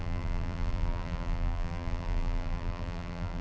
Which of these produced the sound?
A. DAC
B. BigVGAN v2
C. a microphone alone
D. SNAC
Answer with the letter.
B